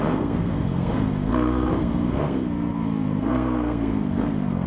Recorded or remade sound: remade